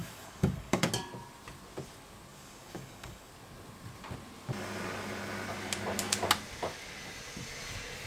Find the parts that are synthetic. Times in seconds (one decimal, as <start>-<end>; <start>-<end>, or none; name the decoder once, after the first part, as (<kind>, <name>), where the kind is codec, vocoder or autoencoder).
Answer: 0.0-0.9 (codec, DAC); 2.3-3.3